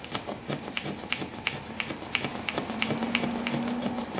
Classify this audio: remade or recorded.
recorded